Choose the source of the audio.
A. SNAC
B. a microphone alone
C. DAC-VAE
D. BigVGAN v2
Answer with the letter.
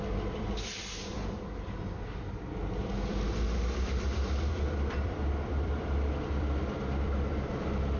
D